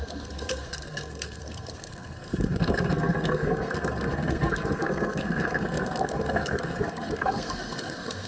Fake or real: fake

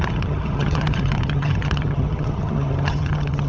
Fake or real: fake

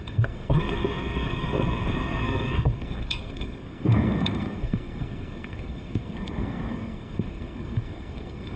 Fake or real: fake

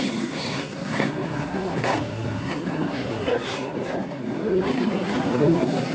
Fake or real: fake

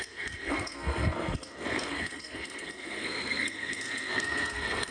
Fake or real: fake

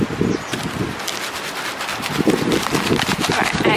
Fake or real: real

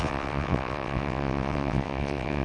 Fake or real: fake